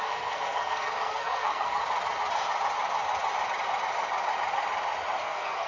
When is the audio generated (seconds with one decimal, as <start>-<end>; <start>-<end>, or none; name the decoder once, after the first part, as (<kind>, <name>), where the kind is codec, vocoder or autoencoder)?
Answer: 0.0-1.8 (codec, SNAC); 5.2-5.7